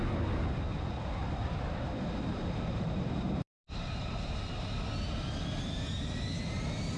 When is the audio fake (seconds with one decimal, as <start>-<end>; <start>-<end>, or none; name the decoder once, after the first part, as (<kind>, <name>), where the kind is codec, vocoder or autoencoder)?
1.2-4.5 (vocoder, BigVGAN v2)